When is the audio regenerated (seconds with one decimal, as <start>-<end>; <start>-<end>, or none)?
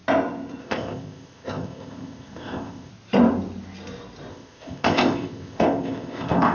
0.6-2.9; 4.3-6.5